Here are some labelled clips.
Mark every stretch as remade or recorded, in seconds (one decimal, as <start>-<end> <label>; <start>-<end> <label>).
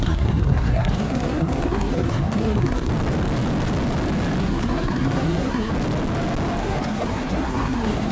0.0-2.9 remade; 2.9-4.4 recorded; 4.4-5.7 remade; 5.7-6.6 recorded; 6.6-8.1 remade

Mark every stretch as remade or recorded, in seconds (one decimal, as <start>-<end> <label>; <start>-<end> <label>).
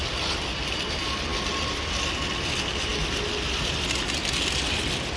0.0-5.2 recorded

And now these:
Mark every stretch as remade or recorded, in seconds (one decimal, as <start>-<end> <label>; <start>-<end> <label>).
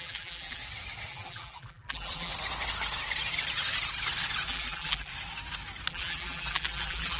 0.0-0.6 remade; 0.6-1.1 recorded; 1.1-2.3 remade; 2.3-4.5 recorded; 4.5-5.1 remade; 5.1-5.9 recorded; 5.9-7.2 remade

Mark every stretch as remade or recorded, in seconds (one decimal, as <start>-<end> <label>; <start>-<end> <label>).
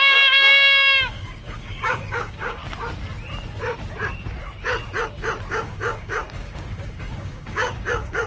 0.0-2.6 remade; 2.6-5.5 recorded; 5.5-8.3 remade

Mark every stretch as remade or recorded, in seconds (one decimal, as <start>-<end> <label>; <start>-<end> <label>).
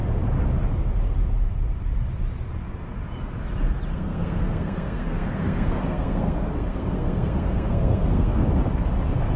0.0-3.9 recorded; 3.9-8.4 remade; 8.4-9.4 recorded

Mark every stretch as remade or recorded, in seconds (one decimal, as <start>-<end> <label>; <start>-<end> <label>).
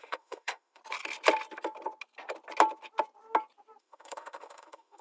0.0-0.8 remade; 0.8-3.8 recorded; 3.8-5.0 remade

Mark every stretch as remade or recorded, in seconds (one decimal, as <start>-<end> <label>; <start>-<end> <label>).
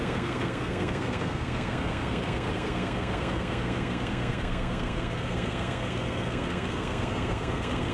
0.0-7.9 remade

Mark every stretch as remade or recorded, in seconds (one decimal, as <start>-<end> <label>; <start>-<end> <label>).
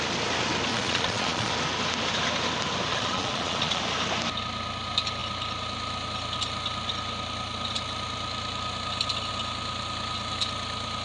0.0-0.7 recorded; 0.7-1.5 remade; 1.5-2.9 recorded; 2.9-3.8 remade; 3.8-11.0 recorded